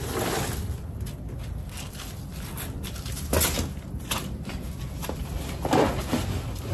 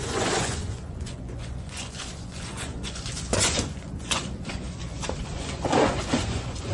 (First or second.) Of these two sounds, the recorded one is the first